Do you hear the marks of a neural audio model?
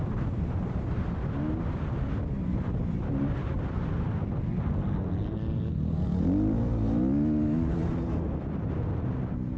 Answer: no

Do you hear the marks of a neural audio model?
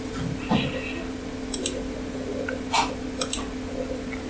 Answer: no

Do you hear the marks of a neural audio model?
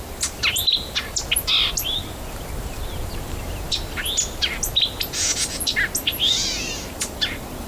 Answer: no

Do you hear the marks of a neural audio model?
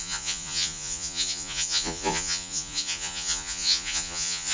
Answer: yes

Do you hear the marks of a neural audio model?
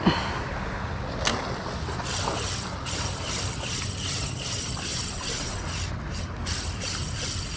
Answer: no